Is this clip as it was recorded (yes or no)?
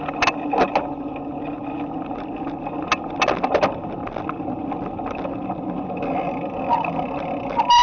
yes